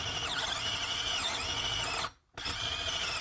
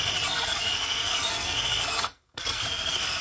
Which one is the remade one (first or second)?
second